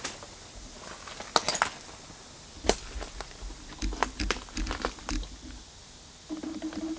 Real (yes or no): yes